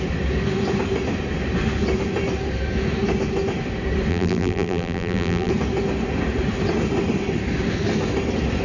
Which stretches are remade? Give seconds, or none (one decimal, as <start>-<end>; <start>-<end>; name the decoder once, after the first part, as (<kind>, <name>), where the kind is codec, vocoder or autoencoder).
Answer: 4.1-5.5 (vocoder, BigVGAN v2)